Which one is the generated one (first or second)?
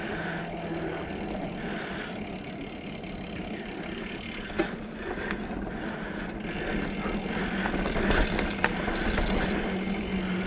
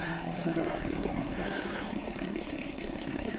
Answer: second